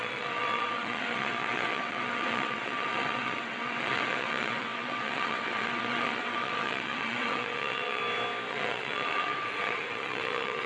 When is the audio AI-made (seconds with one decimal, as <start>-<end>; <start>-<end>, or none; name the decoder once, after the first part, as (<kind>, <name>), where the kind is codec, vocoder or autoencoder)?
0.0-8.0 (vocoder, WaveNeXt); 8.5-10.7